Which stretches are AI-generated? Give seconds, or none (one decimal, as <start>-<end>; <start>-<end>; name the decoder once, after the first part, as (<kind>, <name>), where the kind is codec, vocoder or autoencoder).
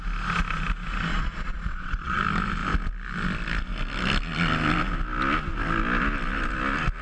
1.1-2.2 (vocoder, Vocos)